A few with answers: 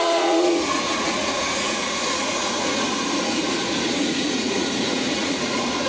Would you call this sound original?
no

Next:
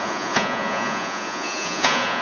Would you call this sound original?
no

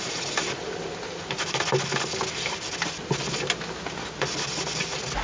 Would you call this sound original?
yes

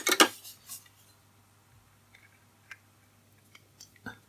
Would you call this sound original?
yes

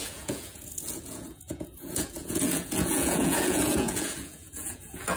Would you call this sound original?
no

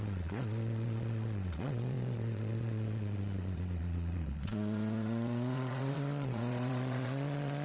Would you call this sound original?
no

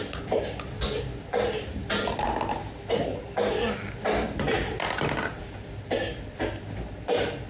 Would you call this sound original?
yes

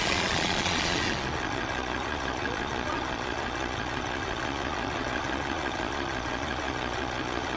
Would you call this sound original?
no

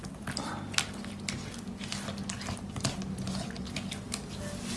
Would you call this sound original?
yes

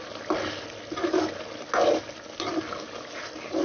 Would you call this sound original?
yes